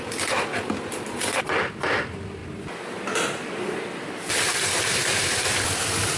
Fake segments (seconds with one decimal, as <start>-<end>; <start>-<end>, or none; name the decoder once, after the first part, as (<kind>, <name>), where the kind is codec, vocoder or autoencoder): none